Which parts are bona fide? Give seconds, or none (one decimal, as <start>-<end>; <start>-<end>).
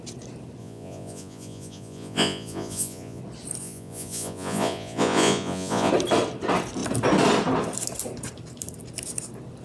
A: 0.0-0.6; 3.2-3.6; 5.9-9.6